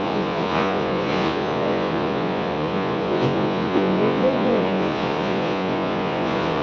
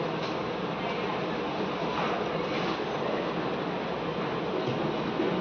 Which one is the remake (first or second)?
first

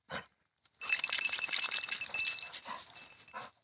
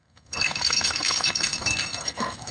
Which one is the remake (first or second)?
second